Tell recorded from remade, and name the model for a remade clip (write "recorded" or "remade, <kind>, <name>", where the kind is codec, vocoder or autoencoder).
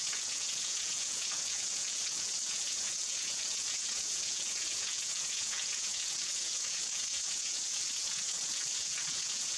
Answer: remade, vocoder, Vocos